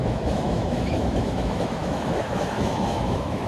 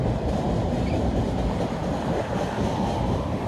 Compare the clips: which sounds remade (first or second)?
first